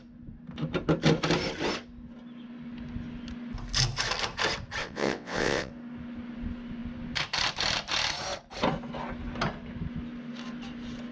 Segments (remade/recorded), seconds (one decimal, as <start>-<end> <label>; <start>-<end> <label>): 0.0-4.8 recorded; 4.8-5.7 remade; 5.7-11.1 recorded